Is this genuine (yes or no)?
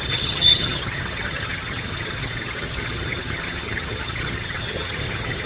no